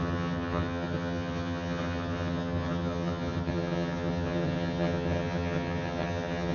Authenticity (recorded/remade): remade